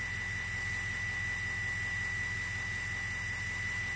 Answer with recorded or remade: recorded